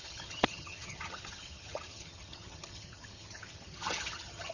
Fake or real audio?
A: fake